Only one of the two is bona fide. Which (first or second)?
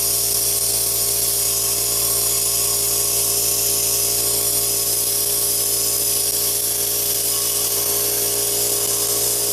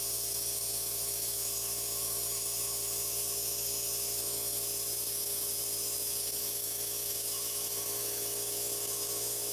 first